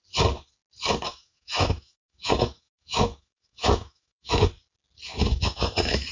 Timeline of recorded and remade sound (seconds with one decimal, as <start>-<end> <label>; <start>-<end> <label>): 0.0-1.1 recorded; 1.1-4.5 remade; 4.5-5.1 recorded; 5.1-6.1 remade